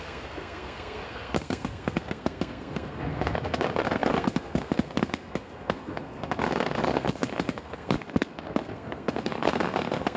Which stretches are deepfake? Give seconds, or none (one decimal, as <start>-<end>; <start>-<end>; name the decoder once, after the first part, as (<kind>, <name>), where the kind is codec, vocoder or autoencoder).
0.0-10.2 (codec, SNAC)